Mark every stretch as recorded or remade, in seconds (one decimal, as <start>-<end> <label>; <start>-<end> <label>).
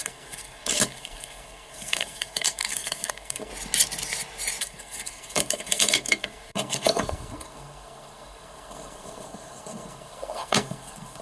0.0-3.5 remade; 3.5-4.6 recorded; 4.6-11.2 remade